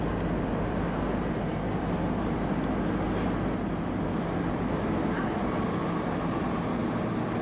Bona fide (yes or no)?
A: yes